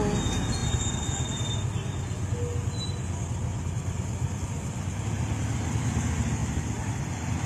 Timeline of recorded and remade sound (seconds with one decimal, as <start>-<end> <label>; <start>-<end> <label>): 0.0-6.4 recorded; 6.4-7.0 remade; 7.0-7.5 recorded

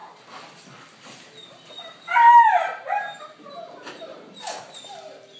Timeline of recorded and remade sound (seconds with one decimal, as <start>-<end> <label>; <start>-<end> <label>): 0.0-4.1 recorded; 4.1-4.6 remade; 4.6-5.4 recorded

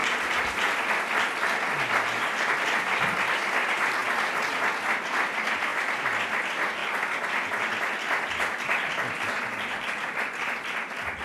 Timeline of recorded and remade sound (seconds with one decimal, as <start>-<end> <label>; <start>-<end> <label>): 0.0-11.2 recorded

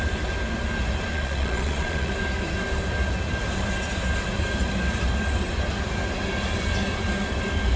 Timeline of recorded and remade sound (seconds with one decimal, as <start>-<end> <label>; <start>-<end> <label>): 0.0-1.1 recorded; 1.1-2.1 remade; 2.1-7.8 recorded

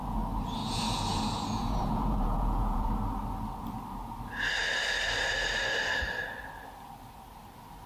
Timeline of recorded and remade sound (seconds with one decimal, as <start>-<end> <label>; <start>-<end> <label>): 0.0-0.6 recorded; 0.6-2.9 remade; 2.9-7.9 recorded

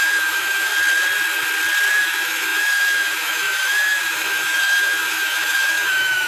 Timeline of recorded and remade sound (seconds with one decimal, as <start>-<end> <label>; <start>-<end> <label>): 0.0-0.7 remade; 0.7-1.9 recorded; 1.9-6.3 remade

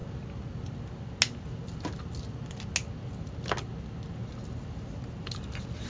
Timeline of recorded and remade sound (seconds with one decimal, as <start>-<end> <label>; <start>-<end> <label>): 0.0-5.9 recorded